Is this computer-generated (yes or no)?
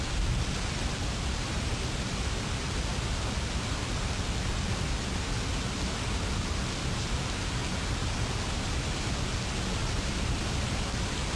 no